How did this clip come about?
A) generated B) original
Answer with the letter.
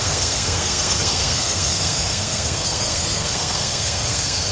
A